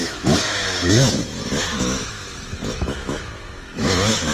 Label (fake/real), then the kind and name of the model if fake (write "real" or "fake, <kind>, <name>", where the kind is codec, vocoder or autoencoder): fake, autoencoder, DAC-VAE